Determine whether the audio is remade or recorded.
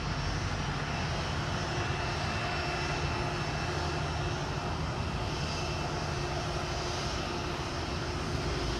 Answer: recorded